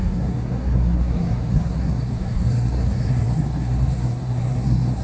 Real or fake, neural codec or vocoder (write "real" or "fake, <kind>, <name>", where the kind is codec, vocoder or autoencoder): fake, codec, SNAC